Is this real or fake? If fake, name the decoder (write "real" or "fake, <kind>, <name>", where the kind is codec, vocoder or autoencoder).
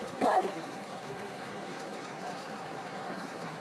fake, codec, SNAC